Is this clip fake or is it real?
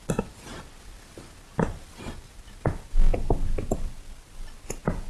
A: real